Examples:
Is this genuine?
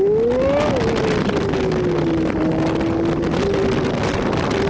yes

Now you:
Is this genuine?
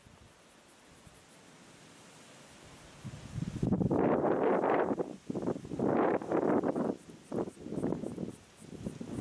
yes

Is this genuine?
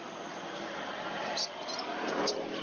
no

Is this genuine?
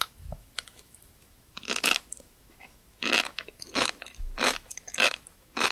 no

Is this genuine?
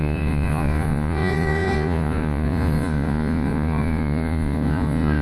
no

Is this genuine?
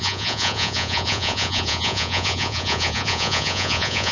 no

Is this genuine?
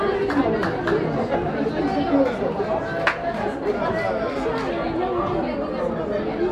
yes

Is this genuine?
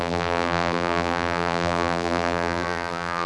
no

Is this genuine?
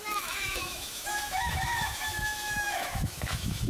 no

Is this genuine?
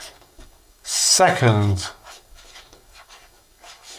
no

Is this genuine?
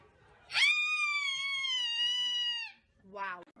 yes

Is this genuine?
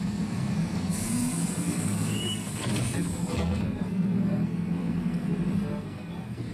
no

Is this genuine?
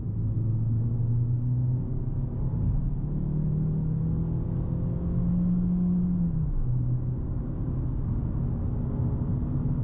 yes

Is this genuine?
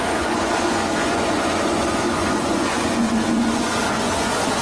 no